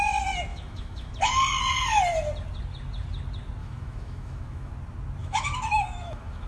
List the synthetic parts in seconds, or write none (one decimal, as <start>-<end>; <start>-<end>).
0.5-1.1; 3.6-4.7; 5.2-6.5